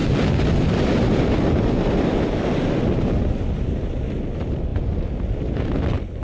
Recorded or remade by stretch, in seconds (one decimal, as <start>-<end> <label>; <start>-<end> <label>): 0.0-1.2 remade; 1.2-6.2 recorded